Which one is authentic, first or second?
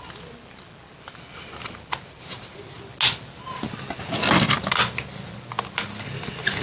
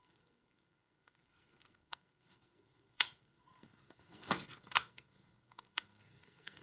first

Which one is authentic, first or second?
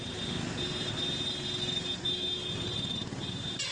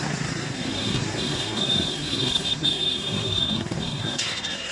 first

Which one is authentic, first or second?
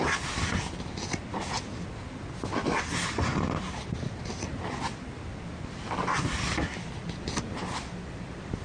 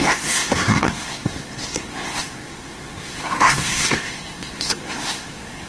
first